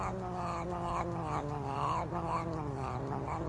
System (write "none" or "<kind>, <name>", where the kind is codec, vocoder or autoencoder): none